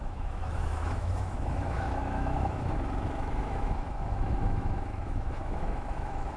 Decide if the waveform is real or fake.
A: fake